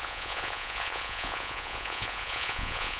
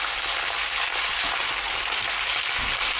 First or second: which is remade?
first